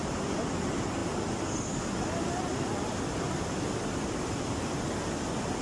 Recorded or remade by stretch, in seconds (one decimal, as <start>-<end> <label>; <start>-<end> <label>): 0.0-5.6 recorded